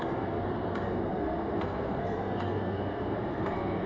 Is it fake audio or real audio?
fake